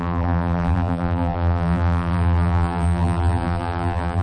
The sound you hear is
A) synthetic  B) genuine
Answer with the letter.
A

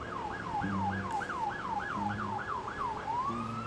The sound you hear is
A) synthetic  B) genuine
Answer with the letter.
A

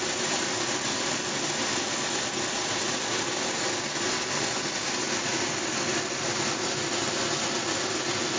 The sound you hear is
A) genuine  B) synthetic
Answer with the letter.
A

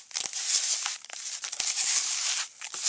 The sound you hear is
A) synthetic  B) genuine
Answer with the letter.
B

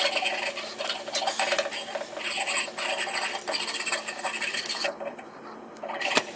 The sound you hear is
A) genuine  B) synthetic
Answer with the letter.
A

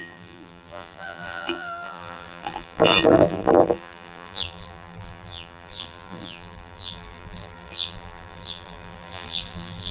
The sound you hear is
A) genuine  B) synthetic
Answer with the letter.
B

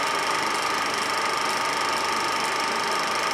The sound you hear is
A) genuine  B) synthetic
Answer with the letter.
A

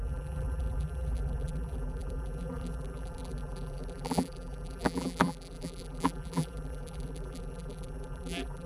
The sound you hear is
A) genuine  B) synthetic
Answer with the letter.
B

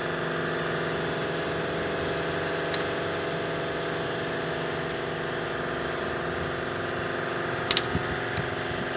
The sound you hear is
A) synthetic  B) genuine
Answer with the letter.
B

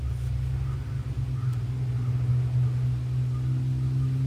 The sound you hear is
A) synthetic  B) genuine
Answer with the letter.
B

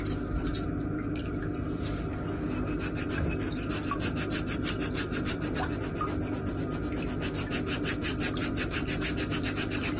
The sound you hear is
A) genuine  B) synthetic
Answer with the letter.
A